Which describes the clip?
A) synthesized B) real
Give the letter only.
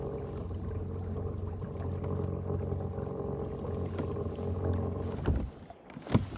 B